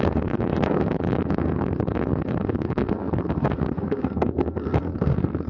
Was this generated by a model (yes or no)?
yes